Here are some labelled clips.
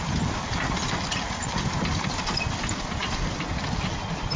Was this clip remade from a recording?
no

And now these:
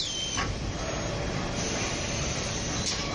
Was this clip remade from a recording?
yes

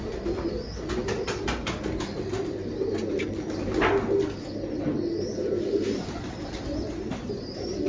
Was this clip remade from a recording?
no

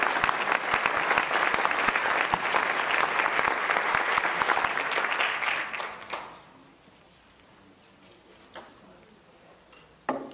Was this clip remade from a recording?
no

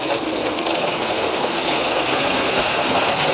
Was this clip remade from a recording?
yes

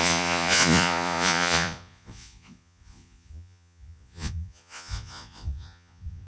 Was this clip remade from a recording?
yes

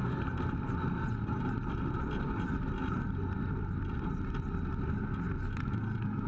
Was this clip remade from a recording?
no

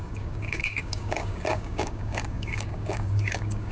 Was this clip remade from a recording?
yes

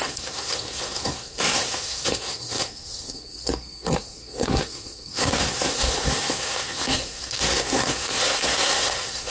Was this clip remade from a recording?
yes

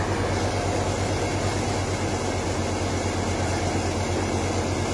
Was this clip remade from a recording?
no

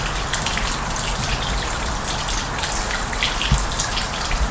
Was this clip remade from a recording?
no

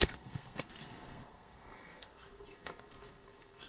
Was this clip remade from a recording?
yes